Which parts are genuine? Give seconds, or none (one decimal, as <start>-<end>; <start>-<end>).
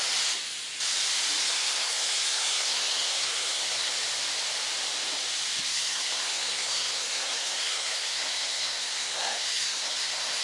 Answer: 0.0-1.4; 3.9-5.7